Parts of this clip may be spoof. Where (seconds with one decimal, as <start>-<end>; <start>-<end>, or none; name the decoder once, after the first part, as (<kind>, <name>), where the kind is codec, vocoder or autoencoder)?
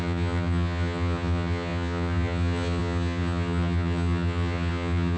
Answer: 0.0-5.2 (vocoder, HiFi-GAN)